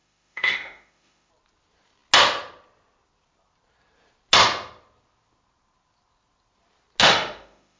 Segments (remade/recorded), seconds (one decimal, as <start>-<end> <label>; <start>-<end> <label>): 0.0-1.3 remade; 1.3-7.0 recorded; 7.0-7.8 remade